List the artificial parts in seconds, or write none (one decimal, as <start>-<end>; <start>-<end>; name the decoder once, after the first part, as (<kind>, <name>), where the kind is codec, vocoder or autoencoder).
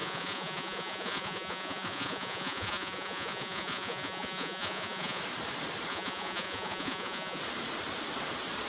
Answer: 0.0-5.2 (vocoder, Vocos); 5.9-7.4